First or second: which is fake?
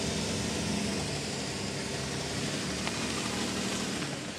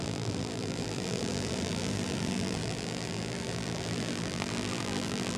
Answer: second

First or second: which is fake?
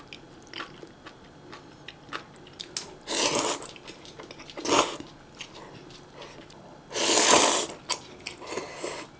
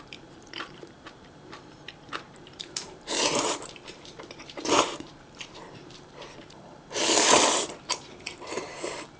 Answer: second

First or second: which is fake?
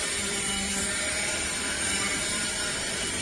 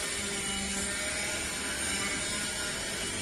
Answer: first